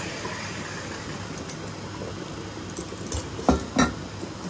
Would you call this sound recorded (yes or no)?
yes